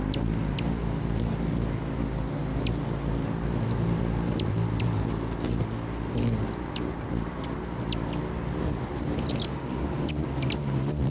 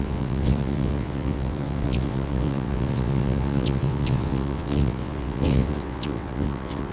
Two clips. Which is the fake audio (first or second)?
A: second